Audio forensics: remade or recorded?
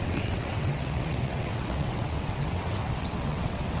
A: remade